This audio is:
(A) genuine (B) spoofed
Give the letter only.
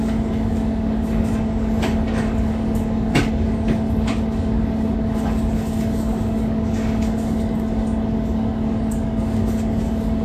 B